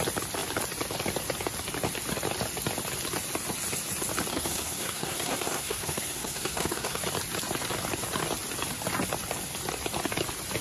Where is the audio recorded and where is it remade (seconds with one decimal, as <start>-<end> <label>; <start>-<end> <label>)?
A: 0.0-4.3 recorded; 4.3-7.0 remade; 7.0-10.6 recorded